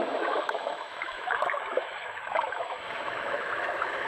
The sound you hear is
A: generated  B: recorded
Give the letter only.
A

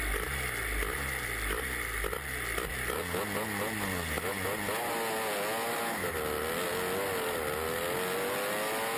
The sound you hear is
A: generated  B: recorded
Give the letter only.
B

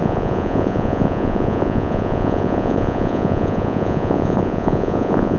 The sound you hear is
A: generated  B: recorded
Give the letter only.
A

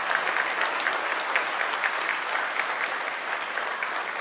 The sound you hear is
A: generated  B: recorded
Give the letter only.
B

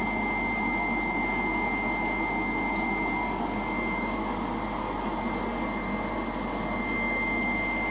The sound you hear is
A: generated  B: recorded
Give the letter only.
B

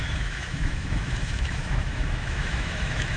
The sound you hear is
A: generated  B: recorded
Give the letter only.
A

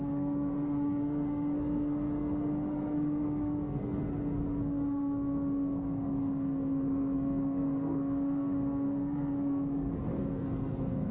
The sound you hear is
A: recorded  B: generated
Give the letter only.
B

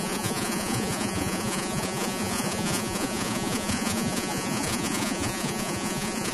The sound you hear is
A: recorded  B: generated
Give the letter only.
B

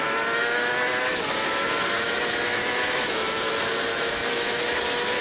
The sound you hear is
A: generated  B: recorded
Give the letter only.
A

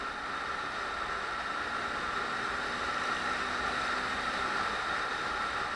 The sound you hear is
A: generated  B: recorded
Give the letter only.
B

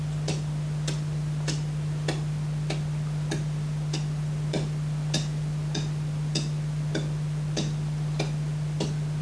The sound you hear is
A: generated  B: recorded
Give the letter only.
B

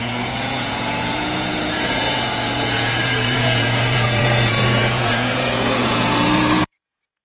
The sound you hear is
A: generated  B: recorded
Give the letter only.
A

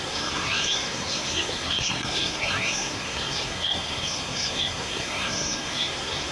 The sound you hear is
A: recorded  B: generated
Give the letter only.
B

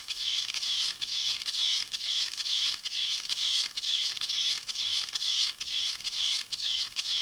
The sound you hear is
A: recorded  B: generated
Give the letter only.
B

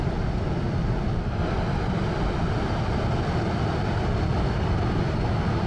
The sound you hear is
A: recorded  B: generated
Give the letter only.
A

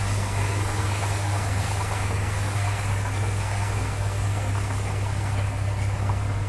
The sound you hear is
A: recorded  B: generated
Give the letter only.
B